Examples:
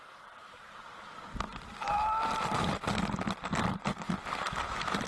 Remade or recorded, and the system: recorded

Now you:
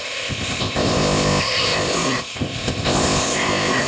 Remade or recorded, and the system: remade, codec, ZipCodec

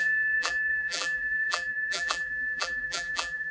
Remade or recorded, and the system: remade, vocoder, BigVGAN v2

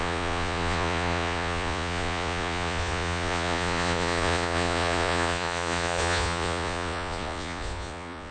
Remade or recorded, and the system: remade, vocoder, Vocos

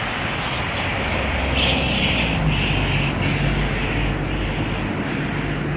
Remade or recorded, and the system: recorded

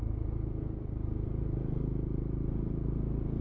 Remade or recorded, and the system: recorded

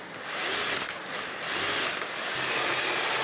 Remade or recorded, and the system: recorded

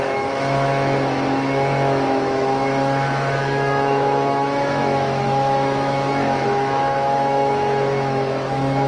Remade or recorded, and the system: remade, autoencoder, DAC-VAE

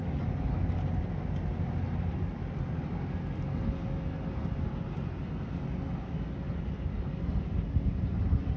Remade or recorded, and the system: recorded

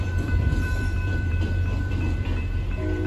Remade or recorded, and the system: remade, vocoder, BigVGAN v2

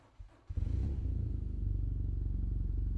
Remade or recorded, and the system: recorded